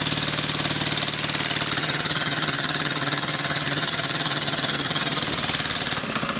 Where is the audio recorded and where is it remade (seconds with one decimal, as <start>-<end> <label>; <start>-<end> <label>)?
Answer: 0.0-1.8 recorded; 1.8-5.2 remade; 5.2-6.4 recorded